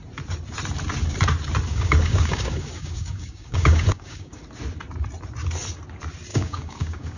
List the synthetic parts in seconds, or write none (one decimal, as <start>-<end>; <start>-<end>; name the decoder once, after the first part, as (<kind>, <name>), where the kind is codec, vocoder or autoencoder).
1.7-4.4 (codec, DAC); 6.3-7.2